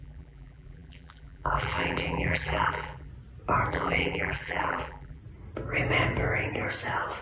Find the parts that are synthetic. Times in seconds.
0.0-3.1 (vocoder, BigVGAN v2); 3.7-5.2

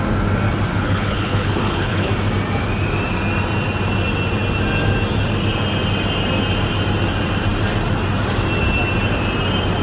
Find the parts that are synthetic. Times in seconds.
0.7-2.1 (codec, HILCodec)

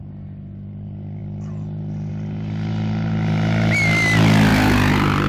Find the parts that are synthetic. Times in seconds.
none

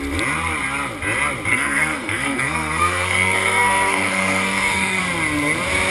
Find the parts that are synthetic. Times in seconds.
1.5-5.0 (codec, SNAC)

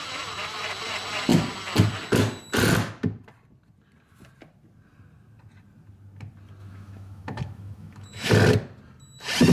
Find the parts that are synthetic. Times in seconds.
6.6-8.3 (autoencoder, DAC-VAE)

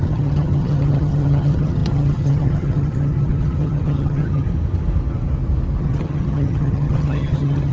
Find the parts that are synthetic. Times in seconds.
0.0-4.5 (vocoder, HiFi-GAN); 5.8-7.7

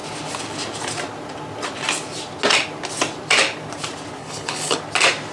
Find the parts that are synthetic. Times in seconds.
4.2-4.8 (codec, HILCodec)